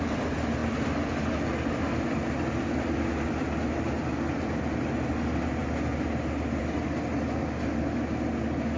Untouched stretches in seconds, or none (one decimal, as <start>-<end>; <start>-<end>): 0.0-8.8